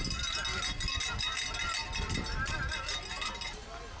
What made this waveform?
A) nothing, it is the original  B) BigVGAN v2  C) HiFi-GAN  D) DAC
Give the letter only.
A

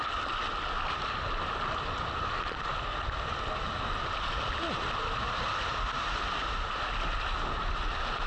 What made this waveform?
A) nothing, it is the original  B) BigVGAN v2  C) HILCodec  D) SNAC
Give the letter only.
A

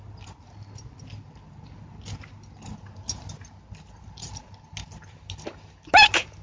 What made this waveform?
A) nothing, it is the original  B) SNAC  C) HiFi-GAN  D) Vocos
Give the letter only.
A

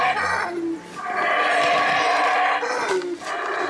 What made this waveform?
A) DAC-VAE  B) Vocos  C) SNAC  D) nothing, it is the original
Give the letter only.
D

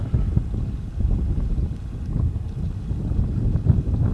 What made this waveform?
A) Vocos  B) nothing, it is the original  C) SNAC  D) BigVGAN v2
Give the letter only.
B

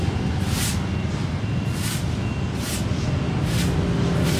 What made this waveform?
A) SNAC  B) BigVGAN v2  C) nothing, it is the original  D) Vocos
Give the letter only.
C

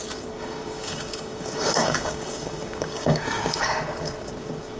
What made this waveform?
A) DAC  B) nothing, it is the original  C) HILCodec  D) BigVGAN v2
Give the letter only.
A